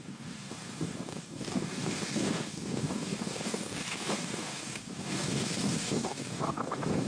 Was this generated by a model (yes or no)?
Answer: yes